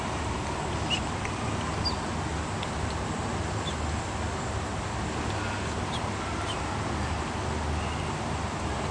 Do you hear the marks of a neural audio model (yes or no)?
no